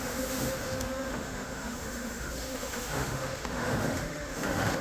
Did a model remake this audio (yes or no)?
yes